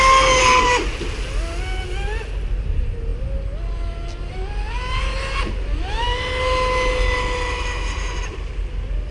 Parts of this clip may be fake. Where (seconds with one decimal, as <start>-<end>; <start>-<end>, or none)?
none